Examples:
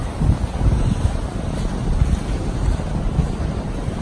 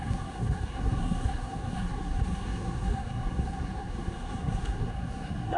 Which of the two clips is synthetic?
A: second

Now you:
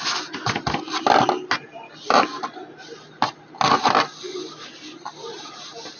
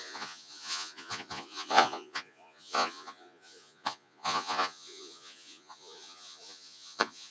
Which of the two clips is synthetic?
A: second